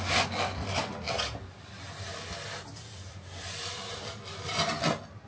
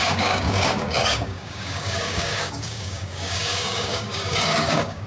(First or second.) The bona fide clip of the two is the first